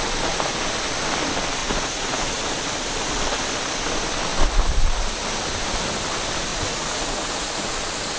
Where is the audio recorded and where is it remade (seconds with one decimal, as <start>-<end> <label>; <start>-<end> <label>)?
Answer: 0.0-1.6 recorded; 1.6-2.3 remade; 2.3-6.5 recorded; 6.5-7.7 remade; 7.7-8.2 recorded